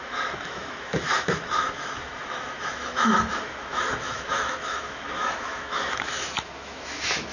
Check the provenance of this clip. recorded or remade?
remade